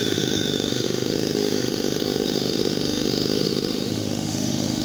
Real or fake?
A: fake